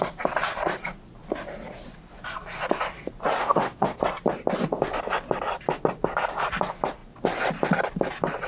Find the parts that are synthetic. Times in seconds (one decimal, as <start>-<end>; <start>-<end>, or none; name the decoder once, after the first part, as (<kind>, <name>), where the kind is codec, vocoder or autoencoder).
3.4-4.0 (codec, SNAC)